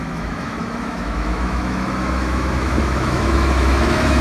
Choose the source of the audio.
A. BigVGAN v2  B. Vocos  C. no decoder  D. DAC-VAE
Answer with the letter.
D